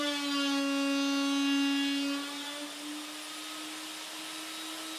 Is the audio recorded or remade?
recorded